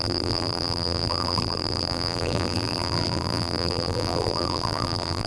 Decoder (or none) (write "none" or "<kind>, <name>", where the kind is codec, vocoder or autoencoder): vocoder, BigVGAN v2